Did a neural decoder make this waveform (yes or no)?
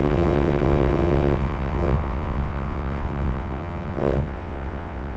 yes